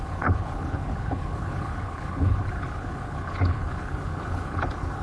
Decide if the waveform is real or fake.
fake